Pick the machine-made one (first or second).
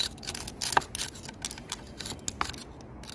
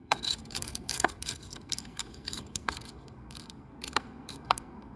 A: second